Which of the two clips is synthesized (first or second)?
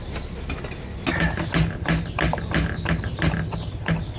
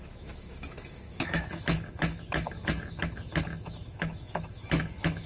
second